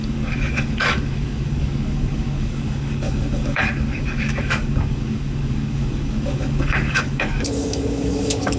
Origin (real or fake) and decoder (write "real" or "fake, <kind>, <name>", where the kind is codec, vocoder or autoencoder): fake, codec, DAC